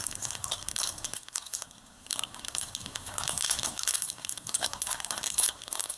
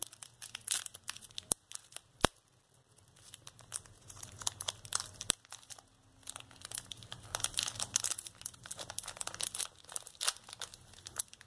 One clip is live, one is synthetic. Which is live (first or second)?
second